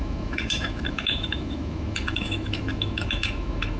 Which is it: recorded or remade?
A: remade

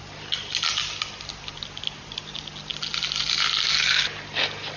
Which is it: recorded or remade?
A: recorded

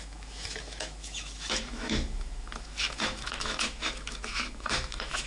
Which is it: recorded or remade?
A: remade